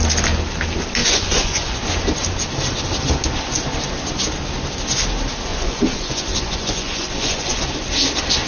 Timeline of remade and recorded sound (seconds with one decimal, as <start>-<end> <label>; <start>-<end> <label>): 0.0-1.0 recorded; 1.0-1.8 remade; 1.8-5.5 recorded; 5.5-7.6 remade; 7.6-8.5 recorded